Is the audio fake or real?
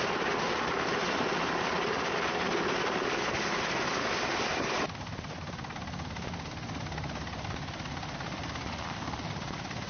real